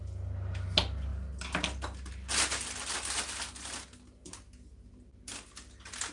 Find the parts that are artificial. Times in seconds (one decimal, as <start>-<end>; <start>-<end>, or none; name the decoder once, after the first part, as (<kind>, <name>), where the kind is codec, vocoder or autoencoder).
none